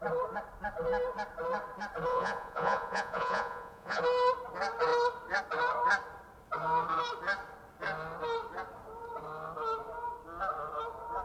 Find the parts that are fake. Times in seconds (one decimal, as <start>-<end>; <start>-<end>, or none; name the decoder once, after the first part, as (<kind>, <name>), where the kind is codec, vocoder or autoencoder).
2.1-4.0 (vocoder, Vocos)